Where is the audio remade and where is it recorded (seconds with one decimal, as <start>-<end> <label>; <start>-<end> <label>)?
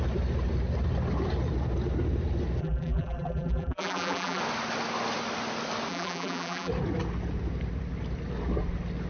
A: 0.0-2.6 recorded; 2.6-4.4 remade; 4.4-5.9 recorded; 5.9-6.7 remade; 6.7-9.1 recorded